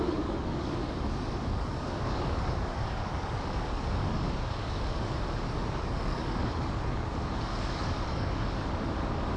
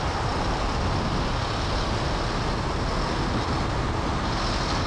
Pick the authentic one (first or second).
second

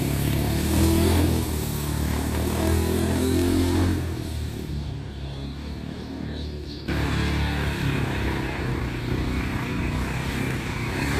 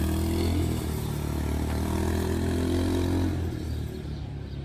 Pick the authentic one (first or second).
second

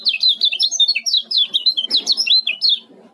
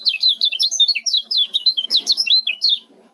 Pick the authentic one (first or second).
first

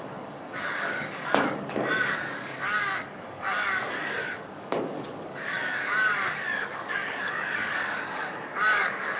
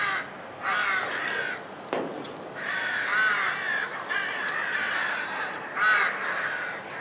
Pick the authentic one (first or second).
second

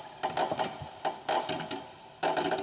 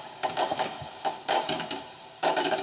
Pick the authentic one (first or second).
first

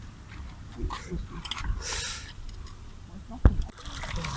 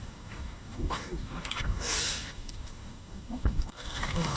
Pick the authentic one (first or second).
first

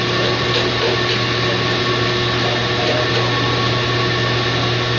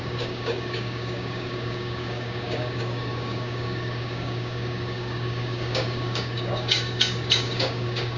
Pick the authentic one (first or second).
first